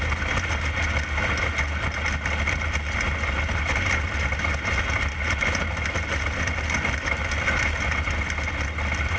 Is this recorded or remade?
recorded